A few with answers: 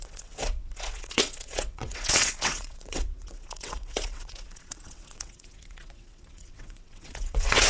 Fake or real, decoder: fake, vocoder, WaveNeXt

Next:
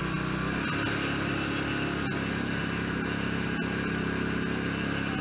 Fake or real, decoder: real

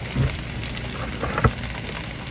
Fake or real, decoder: real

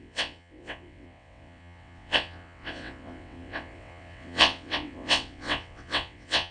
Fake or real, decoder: fake, vocoder, WaveNeXt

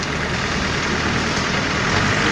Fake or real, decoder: real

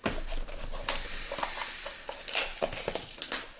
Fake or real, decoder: real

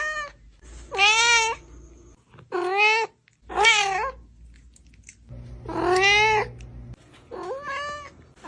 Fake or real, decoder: real